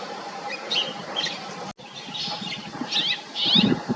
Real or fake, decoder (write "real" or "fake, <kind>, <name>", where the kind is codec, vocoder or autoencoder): real